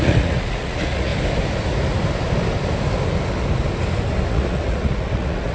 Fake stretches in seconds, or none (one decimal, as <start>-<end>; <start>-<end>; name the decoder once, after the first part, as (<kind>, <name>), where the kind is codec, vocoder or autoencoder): 0.0-1.1 (vocoder, Vocos); 4.3-5.5